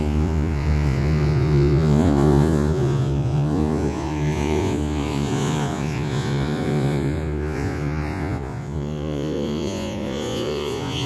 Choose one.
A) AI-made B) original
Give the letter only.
A